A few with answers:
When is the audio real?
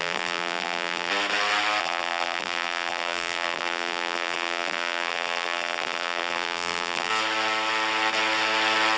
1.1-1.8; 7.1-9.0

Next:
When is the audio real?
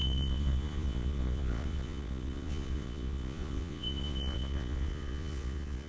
none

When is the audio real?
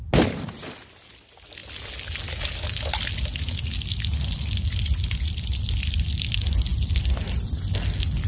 0.0-8.3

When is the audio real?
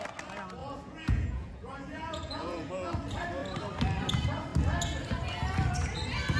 0.0-0.6; 2.7-6.4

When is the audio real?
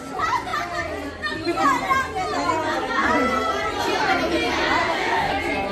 0.0-4.8; 5.3-5.7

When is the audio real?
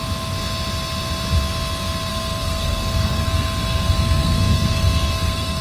0.0-2.1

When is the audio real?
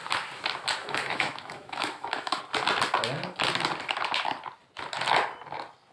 0.0-0.8; 2.4-5.9